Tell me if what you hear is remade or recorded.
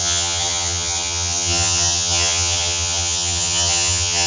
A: remade